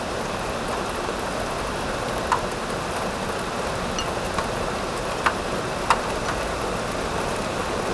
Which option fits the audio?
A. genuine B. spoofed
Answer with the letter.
A